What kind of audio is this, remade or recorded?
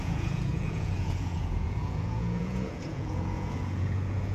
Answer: remade